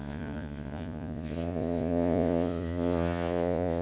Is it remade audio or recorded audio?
remade